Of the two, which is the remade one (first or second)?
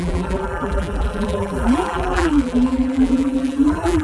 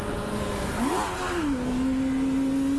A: first